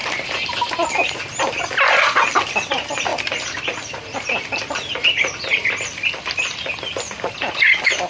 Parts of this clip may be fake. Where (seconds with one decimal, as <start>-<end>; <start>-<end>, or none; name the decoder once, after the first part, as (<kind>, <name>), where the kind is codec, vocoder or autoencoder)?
0.0-0.6 (vocoder, BigVGAN v2); 3.1-6.7